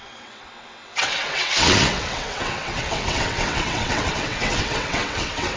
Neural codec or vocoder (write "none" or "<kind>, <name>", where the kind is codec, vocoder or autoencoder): vocoder, WaveNeXt